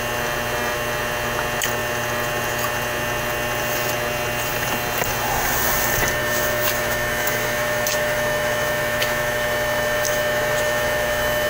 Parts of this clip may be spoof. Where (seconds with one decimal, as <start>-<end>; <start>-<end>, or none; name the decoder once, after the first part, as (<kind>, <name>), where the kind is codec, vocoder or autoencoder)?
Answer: 6.2-11.5 (autoencoder, DAC-VAE)